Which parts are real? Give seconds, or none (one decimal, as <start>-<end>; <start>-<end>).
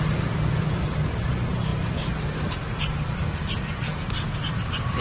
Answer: 0.0-5.0